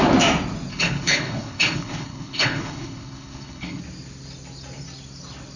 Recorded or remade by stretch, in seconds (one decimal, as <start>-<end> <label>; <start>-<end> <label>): 0.0-0.7 recorded; 0.7-3.8 remade; 3.8-5.6 recorded